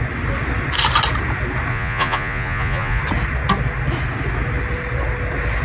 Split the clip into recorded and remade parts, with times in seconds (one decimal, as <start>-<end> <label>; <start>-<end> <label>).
0.0-1.7 recorded; 1.7-3.0 remade; 3.0-5.6 recorded